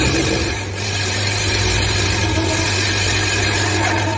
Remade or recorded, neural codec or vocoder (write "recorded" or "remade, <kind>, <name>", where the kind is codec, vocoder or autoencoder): recorded